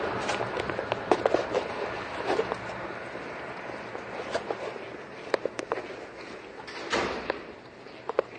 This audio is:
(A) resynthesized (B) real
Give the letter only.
B